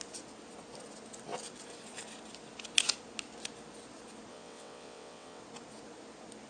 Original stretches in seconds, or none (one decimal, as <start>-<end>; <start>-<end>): 0.0-4.3; 5.4-6.5